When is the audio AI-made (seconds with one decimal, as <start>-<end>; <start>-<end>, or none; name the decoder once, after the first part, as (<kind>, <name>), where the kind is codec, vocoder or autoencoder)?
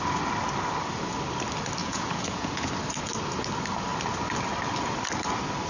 1.8-2.7 (vocoder, Vocos)